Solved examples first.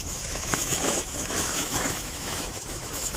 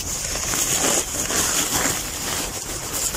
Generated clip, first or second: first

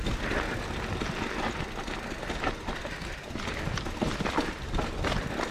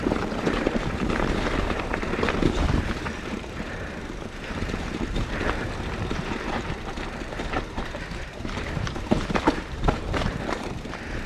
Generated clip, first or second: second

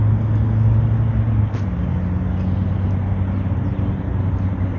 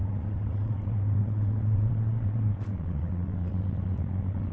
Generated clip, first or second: second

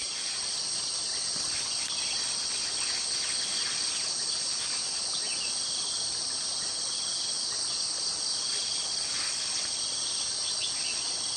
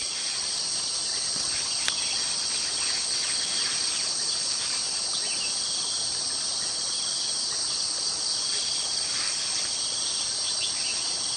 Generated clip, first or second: second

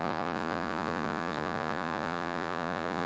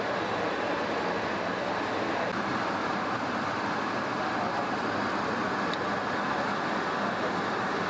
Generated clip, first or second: first